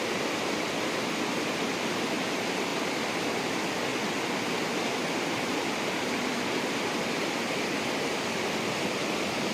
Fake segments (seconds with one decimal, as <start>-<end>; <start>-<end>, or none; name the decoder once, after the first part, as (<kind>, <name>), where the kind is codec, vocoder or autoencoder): none